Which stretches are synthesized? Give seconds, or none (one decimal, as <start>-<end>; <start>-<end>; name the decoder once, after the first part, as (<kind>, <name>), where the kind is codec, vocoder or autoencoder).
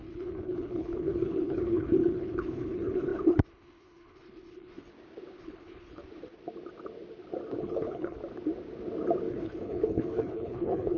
0.0-4.9 (codec, HILCodec); 5.4-6.0; 7.6-8.2; 9.3-11.0